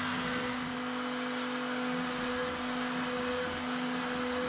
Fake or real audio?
real